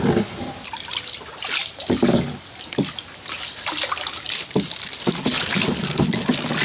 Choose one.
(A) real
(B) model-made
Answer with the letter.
A